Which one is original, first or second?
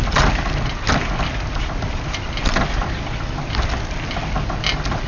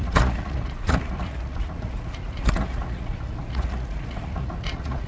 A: first